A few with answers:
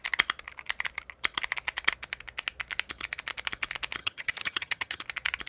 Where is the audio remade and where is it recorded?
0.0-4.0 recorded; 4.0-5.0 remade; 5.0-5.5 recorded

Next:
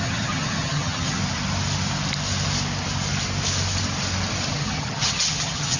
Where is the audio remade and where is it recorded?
0.0-1.2 remade; 1.2-4.5 recorded; 4.5-5.8 remade

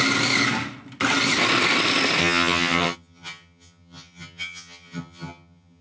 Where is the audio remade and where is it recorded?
0.0-2.2 recorded; 2.2-5.8 remade

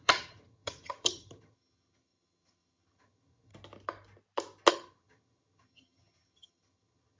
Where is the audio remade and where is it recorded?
0.0-3.5 remade; 3.5-4.7 recorded; 4.7-7.2 remade